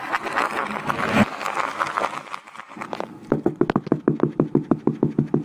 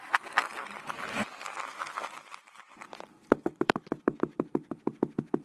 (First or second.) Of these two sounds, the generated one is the second